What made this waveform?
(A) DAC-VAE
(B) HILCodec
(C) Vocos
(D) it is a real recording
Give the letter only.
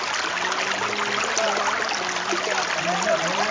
D